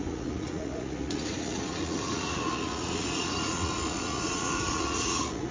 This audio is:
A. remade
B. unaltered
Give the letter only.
A